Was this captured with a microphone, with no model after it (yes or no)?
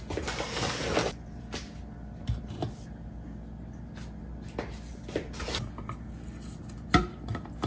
yes